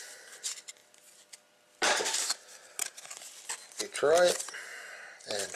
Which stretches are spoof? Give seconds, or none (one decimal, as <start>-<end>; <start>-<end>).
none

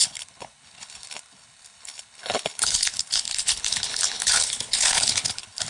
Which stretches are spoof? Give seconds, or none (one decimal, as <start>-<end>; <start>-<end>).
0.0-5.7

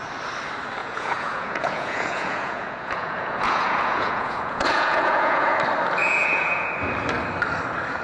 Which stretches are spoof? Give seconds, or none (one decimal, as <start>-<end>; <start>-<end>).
0.8-5.6; 6.0-6.7

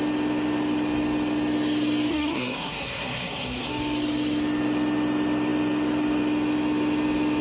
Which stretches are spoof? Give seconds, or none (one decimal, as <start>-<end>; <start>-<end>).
2.1-3.7

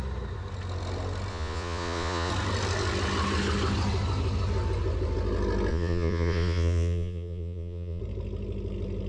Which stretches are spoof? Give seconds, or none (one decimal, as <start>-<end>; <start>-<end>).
1.3-2.3; 5.7-8.0

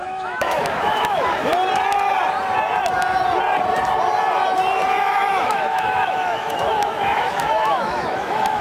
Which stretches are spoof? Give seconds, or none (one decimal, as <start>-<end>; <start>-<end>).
0.0-1.5; 4.9-8.6

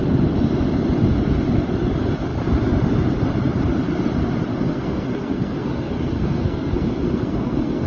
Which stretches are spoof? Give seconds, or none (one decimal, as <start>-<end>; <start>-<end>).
4.5-7.9